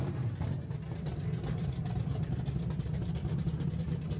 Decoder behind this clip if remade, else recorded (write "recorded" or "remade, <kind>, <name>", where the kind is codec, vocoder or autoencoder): remade, vocoder, BigVGAN v2